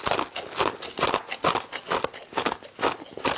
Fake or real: real